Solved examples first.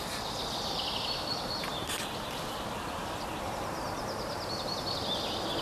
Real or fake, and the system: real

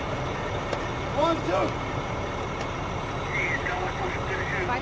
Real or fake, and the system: real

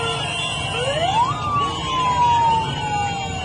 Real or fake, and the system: real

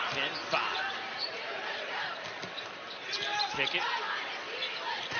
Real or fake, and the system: fake, vocoder, BigVGAN v2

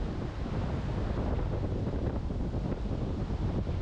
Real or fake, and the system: fake, vocoder, BigVGAN v2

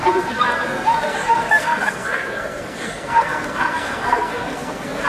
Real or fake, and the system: fake, codec, SNAC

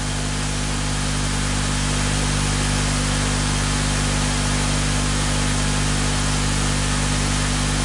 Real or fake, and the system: real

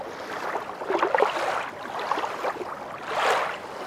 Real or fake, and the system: real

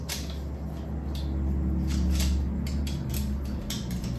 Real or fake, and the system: real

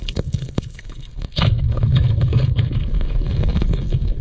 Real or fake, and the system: fake, codec, SNAC